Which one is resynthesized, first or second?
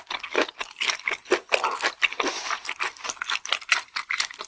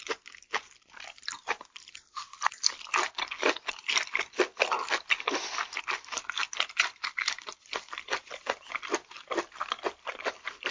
second